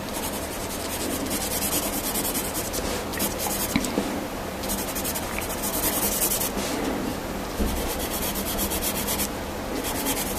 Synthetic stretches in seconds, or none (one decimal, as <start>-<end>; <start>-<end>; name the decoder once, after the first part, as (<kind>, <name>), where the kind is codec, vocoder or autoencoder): 3.1-4.9 (vocoder, BigVGAN v2); 7.1-8.2